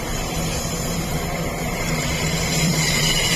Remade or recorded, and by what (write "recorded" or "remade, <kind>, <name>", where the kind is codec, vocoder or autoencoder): remade, vocoder, BigVGAN v2